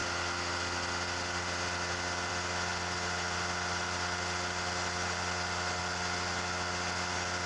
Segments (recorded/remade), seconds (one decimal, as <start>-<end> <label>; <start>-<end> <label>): 0.0-7.5 recorded